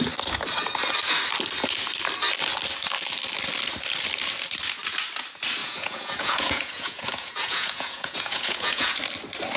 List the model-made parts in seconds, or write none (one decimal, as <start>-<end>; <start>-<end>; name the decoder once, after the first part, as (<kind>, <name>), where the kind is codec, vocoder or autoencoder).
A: 5.6-9.0 (vocoder, Vocos)